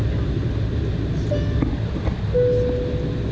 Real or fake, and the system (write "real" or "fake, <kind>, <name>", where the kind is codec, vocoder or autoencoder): real